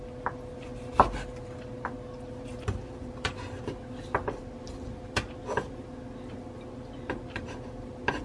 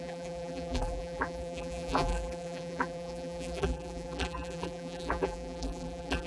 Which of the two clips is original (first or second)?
first